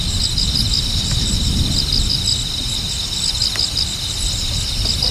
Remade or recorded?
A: recorded